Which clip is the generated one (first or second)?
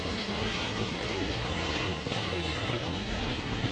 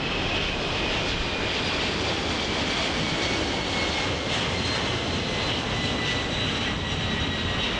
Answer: first